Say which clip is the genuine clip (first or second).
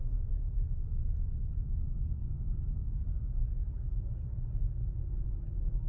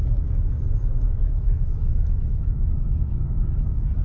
first